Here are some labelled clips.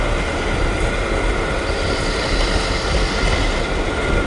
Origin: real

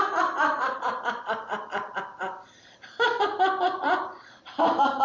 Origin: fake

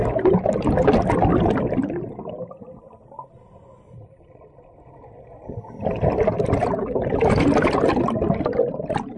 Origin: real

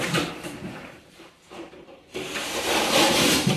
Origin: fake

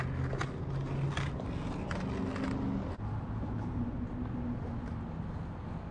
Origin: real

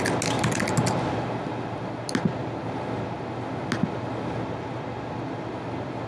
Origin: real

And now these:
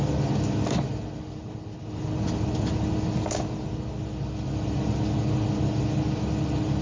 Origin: real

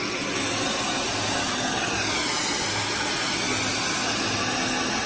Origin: real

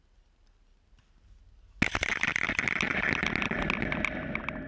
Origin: real